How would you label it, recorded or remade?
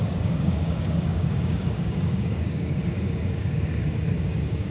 remade